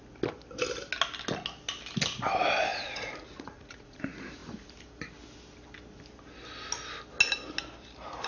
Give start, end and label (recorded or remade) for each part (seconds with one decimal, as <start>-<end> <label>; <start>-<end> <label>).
0.0-2.7 recorded; 2.7-4.0 remade; 4.0-8.3 recorded